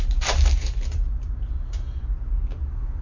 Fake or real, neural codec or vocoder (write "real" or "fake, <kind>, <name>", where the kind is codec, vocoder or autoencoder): fake, vocoder, BigVGAN v2